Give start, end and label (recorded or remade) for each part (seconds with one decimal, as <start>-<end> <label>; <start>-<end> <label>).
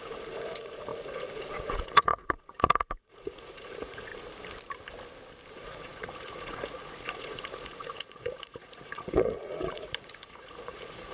0.0-4.1 remade; 4.1-5.5 recorded; 5.5-11.1 remade